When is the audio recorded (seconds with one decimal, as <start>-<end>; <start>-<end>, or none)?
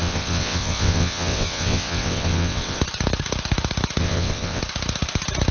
2.8-4.0; 4.6-5.5